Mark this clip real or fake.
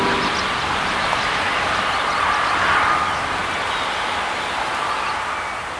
real